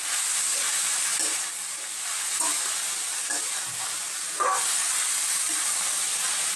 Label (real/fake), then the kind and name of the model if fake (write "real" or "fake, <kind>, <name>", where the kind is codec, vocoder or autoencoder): real